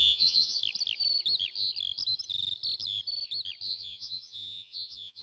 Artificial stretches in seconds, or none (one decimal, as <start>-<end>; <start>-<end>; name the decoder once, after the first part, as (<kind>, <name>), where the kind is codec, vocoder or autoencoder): 0.0-0.6 (vocoder, Vocos); 3.7-5.2